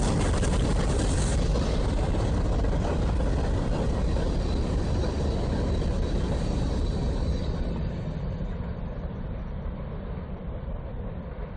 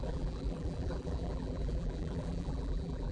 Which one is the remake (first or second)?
second